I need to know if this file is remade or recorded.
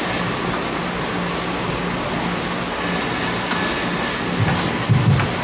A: recorded